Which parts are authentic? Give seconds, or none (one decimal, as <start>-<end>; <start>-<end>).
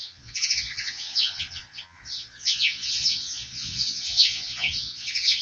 none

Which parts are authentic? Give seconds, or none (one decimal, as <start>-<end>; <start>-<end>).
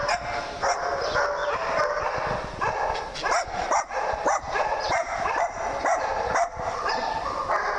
0.0-1.4; 2.0-4.2; 6.9-7.8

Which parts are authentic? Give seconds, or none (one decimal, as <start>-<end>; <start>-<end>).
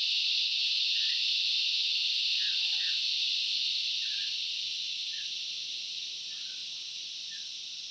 0.0-6.6; 7.2-7.9